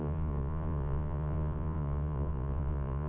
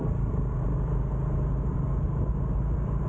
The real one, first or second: second